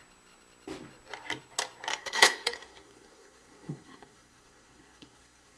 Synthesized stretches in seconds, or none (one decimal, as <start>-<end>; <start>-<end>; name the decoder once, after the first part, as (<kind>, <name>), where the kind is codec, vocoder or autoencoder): 1.9-5.6 (codec, SNAC)